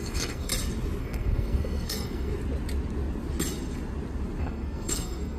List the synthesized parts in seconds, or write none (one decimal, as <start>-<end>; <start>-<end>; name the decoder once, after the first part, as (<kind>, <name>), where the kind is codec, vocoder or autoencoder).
0.0-0.5 (codec, SNAC); 1.0-2.3; 4.4-5.4

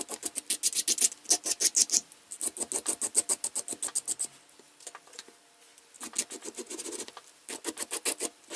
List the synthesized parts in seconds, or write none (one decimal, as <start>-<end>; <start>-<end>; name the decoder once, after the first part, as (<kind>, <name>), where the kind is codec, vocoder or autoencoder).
none